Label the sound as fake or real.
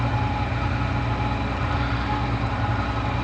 real